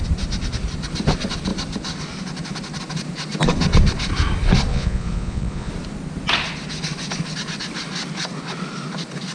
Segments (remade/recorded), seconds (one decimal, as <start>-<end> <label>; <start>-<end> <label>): 0.0-4.7 recorded; 4.7-5.7 remade; 5.7-9.3 recorded